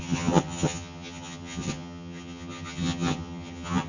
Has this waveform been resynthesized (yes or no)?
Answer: yes